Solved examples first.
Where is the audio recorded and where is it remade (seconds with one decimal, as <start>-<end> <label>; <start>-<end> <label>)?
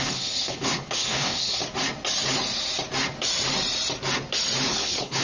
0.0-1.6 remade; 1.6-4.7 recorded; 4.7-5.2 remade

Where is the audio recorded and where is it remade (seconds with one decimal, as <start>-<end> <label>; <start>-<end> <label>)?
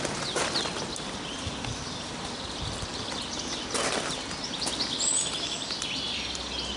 0.0-6.8 recorded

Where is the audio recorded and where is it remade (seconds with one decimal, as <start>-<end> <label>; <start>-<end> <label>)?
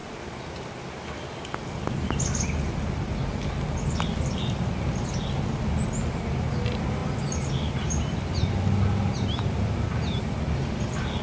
0.0-11.2 recorded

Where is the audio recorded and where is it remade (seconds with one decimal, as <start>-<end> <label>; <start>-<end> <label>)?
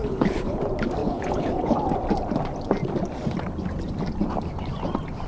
0.0-0.6 remade; 0.6-1.0 recorded; 1.0-1.8 remade; 1.8-5.3 recorded